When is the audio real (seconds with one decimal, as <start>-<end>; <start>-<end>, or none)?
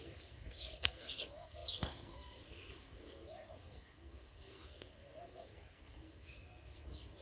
none